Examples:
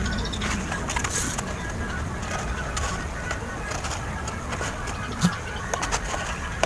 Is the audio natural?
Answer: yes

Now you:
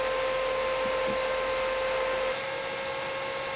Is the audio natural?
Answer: yes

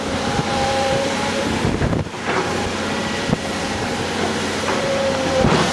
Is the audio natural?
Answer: no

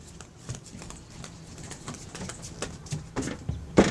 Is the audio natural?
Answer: no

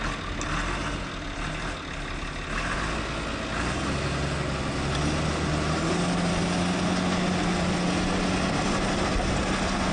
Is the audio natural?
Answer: yes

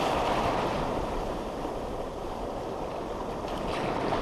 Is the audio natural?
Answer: yes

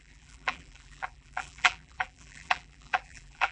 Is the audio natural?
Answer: no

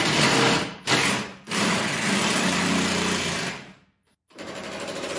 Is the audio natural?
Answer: no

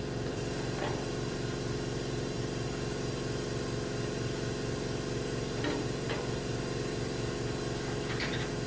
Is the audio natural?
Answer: no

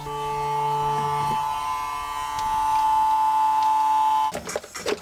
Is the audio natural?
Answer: yes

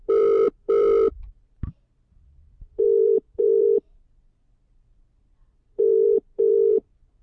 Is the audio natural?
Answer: no